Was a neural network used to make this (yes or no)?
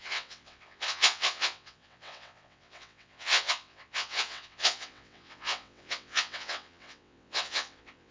yes